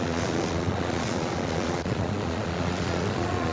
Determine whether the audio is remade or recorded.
remade